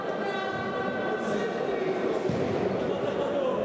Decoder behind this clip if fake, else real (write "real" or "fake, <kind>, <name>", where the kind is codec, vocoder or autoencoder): real